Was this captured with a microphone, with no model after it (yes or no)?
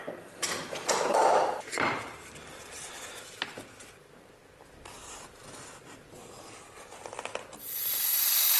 no